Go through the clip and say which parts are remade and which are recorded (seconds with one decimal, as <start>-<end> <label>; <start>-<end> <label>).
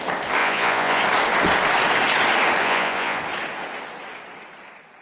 0.0-0.4 recorded; 0.4-1.0 remade; 1.0-2.6 recorded; 2.6-3.2 remade; 3.2-5.0 recorded